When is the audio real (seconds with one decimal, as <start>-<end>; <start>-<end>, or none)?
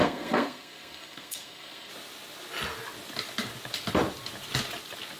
1.9-5.2